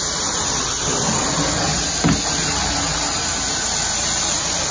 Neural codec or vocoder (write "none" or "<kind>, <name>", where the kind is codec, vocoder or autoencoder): none